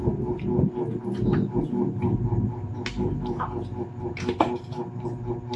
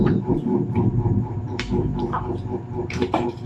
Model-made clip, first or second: second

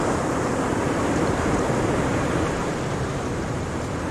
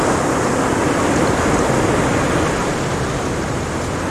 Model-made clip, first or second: first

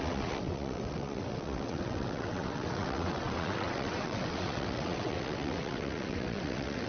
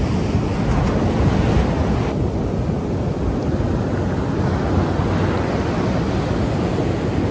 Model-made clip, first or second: first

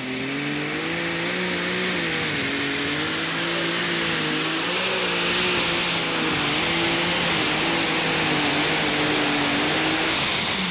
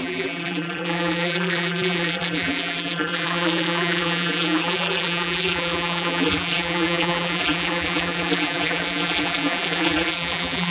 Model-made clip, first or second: second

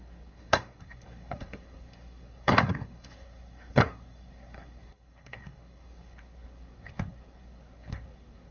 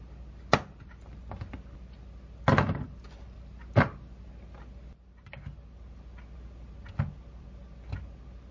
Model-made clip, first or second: first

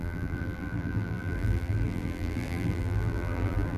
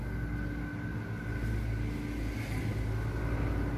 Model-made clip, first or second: first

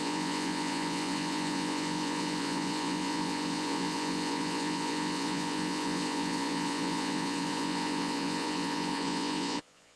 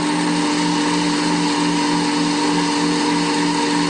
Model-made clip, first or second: first